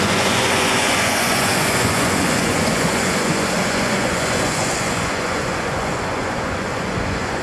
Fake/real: fake